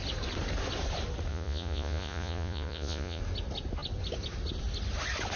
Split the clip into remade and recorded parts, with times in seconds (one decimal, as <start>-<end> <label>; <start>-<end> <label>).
0.0-1.3 recorded; 1.3-3.2 remade; 3.2-5.4 recorded